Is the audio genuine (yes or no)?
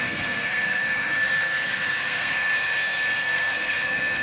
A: no